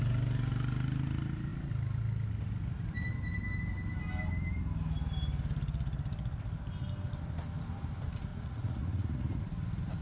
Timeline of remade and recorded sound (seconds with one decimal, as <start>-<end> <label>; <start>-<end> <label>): 0.0-8.3 recorded; 8.3-9.4 remade; 9.4-10.0 recorded